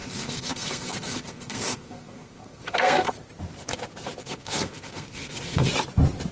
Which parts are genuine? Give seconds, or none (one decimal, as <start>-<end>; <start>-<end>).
3.1-4.2; 5.7-6.3